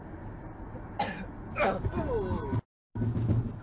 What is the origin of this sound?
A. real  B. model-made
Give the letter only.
A